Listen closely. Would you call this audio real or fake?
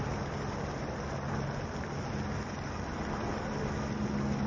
real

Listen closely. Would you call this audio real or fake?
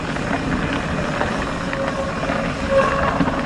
real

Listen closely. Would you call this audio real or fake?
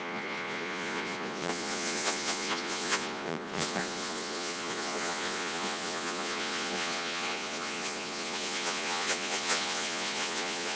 fake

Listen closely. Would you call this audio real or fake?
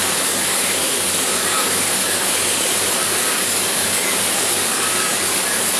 fake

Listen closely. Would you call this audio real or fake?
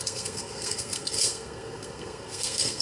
fake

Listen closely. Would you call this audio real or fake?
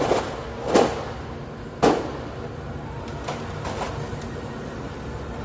real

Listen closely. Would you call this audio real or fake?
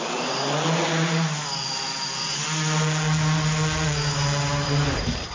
real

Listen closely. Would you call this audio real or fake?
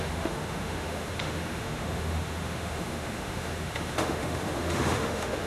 fake